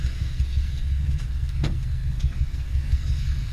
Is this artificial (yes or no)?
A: yes